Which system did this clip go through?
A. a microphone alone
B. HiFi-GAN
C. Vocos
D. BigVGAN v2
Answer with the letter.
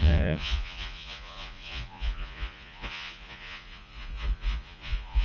C